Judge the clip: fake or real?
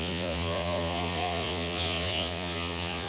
fake